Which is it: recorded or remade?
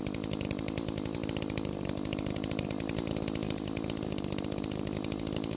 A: recorded